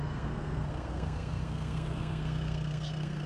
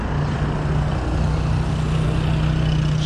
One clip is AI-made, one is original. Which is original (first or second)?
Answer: second